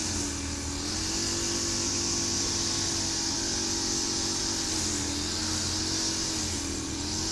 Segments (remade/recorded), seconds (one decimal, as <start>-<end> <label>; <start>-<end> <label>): 0.0-7.3 recorded